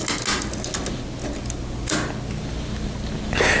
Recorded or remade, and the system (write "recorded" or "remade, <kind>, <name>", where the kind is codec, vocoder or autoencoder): recorded